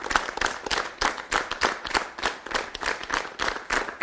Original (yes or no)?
yes